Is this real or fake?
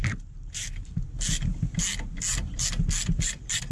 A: real